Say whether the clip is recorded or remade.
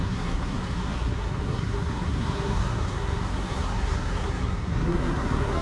remade